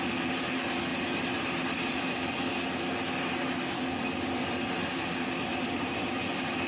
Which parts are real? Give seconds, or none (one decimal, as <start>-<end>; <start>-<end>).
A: 0.0-6.7